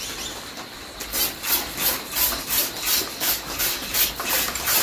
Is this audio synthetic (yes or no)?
no